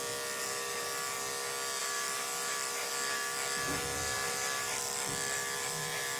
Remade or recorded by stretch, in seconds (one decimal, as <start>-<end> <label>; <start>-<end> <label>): 0.0-1.8 recorded; 1.8-2.9 remade; 2.9-4.0 recorded; 4.0-4.8 remade; 4.8-6.2 recorded